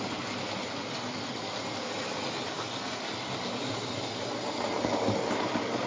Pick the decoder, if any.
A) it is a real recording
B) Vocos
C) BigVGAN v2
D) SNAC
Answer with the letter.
A